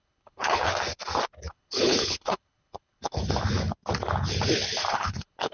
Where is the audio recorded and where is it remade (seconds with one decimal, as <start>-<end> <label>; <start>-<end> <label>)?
0.0-0.7 remade; 0.7-1.5 recorded; 1.5-3.2 remade; 3.2-4.9 recorded; 4.9-5.5 remade